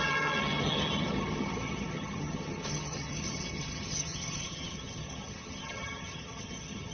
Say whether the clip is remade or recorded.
remade